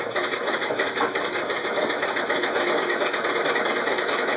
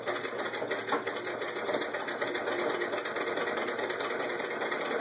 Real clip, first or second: second